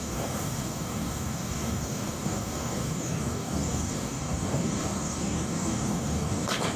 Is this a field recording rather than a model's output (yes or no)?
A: no